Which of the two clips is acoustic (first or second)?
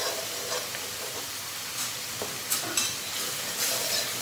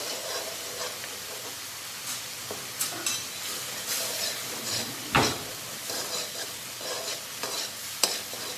second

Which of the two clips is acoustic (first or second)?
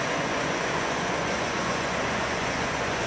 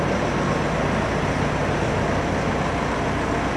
second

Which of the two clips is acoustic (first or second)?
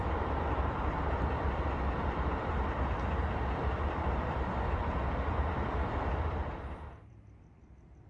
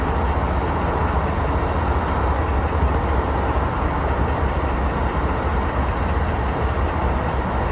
second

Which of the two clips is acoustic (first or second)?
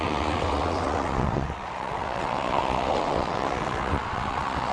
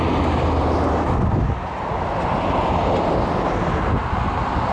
second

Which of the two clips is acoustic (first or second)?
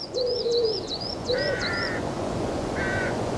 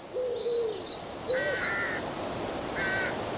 second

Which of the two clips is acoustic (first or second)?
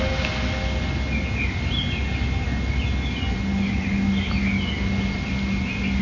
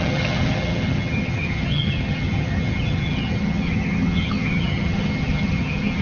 first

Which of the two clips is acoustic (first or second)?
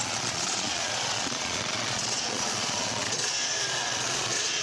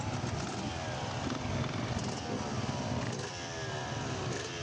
second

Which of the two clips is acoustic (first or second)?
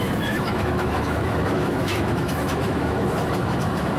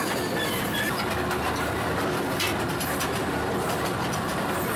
second